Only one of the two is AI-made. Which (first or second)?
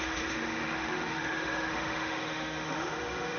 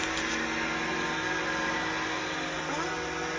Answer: first